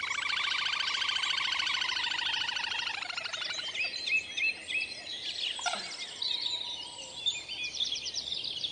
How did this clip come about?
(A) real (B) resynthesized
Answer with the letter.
A